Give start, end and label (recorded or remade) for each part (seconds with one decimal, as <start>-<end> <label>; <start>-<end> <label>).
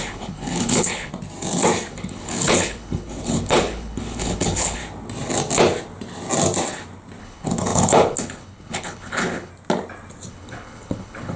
0.0-1.1 remade; 1.1-1.9 recorded; 1.9-4.8 remade; 4.8-7.2 recorded; 7.2-9.5 remade; 9.5-10.3 recorded; 10.3-11.4 remade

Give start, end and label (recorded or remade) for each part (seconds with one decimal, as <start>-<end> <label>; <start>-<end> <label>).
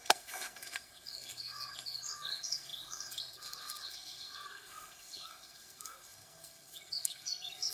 0.0-7.7 remade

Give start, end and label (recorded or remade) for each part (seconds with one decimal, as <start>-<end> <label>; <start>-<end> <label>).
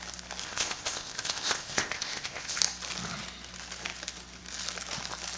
0.0-0.4 recorded; 0.4-2.6 remade; 2.6-5.4 recorded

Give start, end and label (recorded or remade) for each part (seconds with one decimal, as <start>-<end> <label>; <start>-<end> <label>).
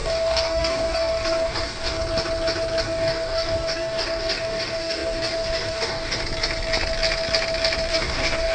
0.0-2.0 remade; 2.0-2.8 recorded; 2.8-6.2 remade; 6.2-7.9 recorded; 7.9-8.5 remade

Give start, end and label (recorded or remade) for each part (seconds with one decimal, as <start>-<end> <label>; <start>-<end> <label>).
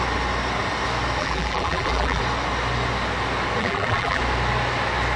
0.0-1.2 recorded; 1.2-2.2 remade; 2.2-3.6 recorded; 3.6-4.2 remade; 4.2-5.2 recorded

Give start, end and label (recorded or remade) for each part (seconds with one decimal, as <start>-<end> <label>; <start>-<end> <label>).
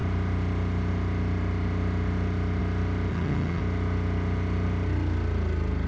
0.0-3.1 recorded; 3.1-3.6 remade; 3.6-5.9 recorded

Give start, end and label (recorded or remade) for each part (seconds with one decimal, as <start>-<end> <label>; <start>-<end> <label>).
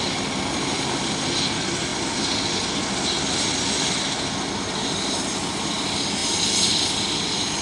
0.0-7.6 recorded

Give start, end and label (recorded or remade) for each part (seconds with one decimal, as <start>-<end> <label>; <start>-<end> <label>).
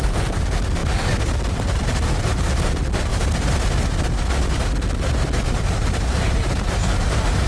0.0-0.8 remade; 0.8-1.5 recorded; 1.5-3.1 remade; 3.1-5.5 recorded; 5.5-7.5 remade